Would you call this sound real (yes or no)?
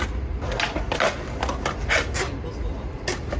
yes